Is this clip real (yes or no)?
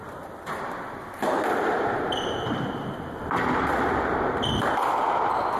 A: no